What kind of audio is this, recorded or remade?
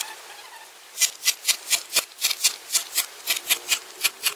recorded